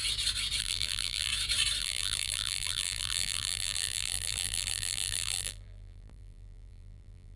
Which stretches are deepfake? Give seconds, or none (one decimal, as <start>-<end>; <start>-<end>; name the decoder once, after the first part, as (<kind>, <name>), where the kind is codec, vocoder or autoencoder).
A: 0.6-1.3 (vocoder, BigVGAN v2); 1.8-7.4